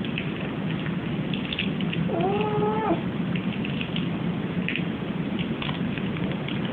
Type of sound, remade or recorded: recorded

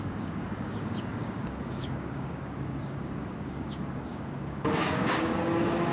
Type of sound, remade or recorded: remade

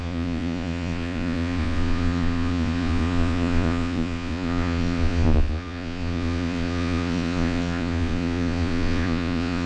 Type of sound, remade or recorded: remade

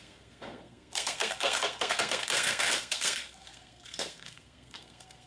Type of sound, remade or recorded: remade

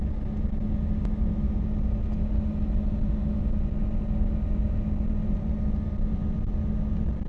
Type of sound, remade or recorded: recorded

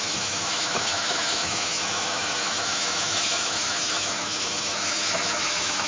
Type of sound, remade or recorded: remade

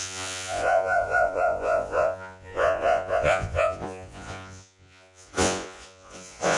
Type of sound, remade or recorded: remade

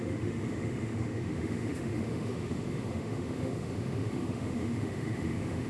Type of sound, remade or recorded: remade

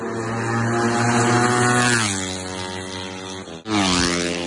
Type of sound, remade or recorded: recorded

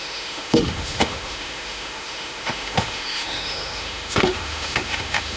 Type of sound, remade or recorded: remade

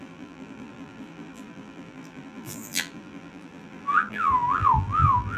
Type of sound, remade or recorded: remade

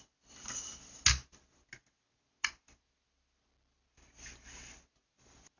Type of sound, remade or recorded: recorded